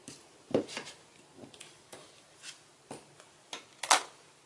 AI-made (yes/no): no